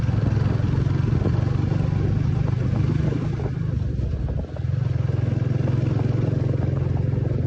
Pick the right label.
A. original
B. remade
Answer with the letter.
A